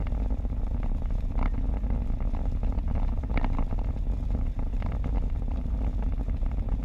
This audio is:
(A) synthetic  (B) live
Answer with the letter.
B